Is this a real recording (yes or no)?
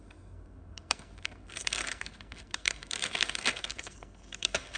no